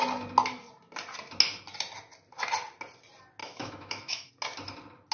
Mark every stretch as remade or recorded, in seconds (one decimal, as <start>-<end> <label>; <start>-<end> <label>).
0.0-3.4 recorded; 3.4-4.3 remade; 4.3-5.1 recorded